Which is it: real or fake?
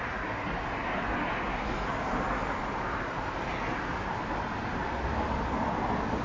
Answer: real